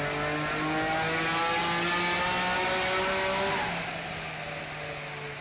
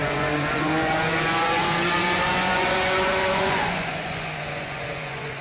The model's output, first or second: second